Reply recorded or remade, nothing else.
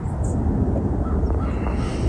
recorded